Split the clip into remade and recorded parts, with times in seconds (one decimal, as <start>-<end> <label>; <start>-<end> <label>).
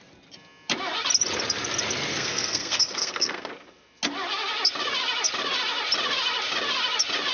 0.0-2.1 recorded; 2.1-3.5 remade; 3.5-7.3 recorded